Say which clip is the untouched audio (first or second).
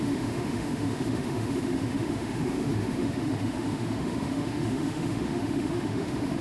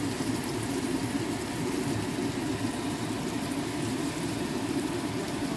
second